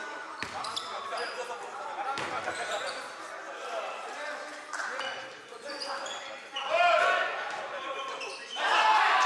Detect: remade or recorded recorded